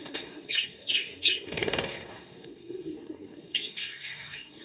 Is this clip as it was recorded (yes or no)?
no